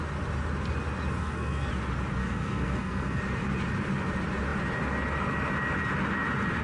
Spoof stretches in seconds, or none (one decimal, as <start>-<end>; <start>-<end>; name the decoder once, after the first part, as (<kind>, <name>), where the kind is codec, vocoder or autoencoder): 1.2-1.7 (codec, SNAC); 2.2-3.2